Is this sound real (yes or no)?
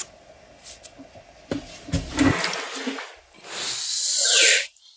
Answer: yes